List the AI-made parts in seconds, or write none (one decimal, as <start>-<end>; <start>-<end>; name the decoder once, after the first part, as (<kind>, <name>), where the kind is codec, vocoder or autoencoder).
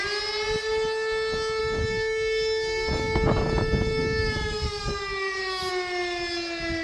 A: 1.6-5.7 (codec, DAC)